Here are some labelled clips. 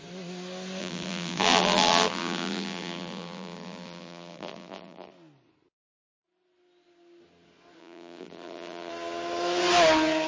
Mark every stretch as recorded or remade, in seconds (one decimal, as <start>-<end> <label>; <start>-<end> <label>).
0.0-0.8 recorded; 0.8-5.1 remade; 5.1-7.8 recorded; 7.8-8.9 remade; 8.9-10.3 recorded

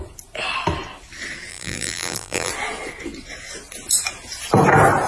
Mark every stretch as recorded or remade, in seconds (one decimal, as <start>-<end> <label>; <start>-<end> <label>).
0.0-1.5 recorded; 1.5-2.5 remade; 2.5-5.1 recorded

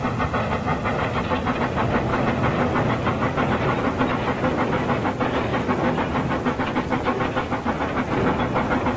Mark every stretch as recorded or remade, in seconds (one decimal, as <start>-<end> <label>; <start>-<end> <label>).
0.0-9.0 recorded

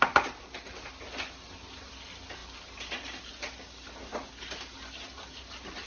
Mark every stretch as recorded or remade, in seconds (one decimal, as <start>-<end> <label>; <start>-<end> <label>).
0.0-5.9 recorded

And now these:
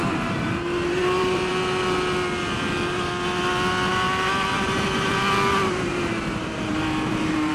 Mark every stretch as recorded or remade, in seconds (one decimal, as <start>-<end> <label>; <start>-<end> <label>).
0.0-1.5 remade; 1.5-3.9 recorded; 3.9-5.1 remade; 5.1-5.7 recorded; 5.7-7.5 remade